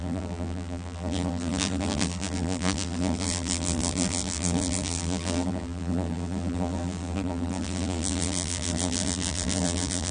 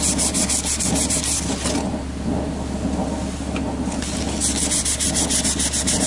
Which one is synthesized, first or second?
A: first